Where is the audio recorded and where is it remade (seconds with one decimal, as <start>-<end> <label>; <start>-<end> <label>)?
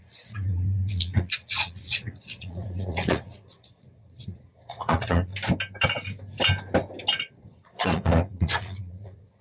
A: 0.0-5.3 remade; 5.3-7.2 recorded; 7.2-9.4 remade